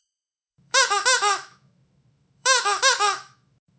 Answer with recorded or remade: remade